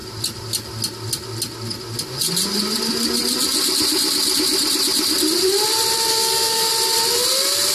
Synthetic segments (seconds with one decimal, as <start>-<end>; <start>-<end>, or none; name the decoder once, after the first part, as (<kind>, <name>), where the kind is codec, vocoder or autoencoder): 6.1-6.7 (codec, SNAC)